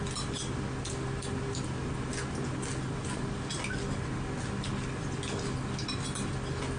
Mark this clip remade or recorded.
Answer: recorded